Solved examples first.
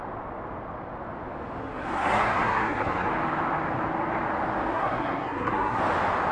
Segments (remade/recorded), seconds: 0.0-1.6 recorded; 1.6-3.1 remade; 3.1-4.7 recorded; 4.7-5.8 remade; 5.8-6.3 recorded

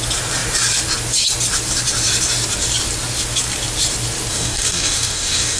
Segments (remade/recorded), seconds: 0.0-4.3 recorded; 4.3-5.6 remade

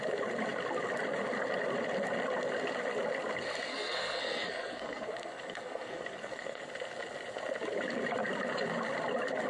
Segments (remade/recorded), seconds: 0.0-3.7 recorded; 3.7-6.6 remade; 6.6-9.5 recorded

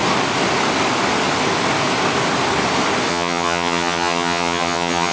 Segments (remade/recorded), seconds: 0.0-3.1 recorded; 3.1-5.1 remade

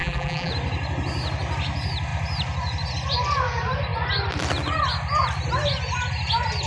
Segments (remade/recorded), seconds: 0.0-0.5 remade; 0.5-6.7 recorded

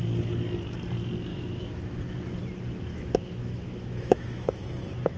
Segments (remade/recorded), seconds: 0.0-1.3 recorded; 1.3-2.0 remade; 2.0-2.9 recorded; 2.9-4.7 remade; 4.7-5.2 recorded

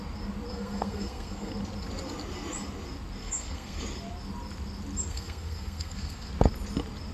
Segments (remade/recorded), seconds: 0.0-0.5 recorded; 0.5-1.5 remade; 1.5-3.2 recorded; 3.2-3.8 remade; 3.8-5.1 recorded; 5.1-6.3 remade; 6.3-7.1 recorded

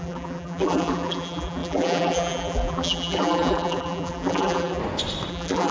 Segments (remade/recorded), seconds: 0.0-4.8 remade; 4.8-5.3 recorded; 5.3-5.7 remade